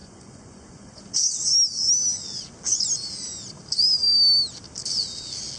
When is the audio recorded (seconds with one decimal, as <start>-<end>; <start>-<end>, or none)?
1.4-5.6